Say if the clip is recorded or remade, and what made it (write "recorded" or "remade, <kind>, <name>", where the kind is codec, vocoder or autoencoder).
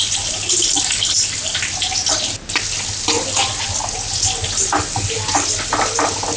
recorded